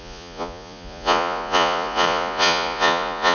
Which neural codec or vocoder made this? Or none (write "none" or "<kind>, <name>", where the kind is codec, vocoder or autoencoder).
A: vocoder, Vocos